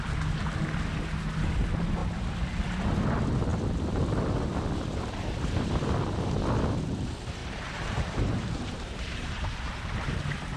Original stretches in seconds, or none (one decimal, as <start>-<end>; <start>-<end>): 0.0-7.4; 9.4-10.6